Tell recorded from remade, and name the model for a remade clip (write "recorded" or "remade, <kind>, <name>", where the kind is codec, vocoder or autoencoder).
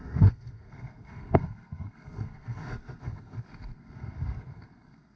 remade, codec, SNAC